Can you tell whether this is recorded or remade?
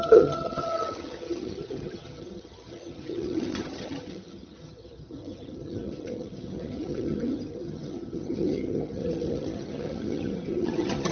remade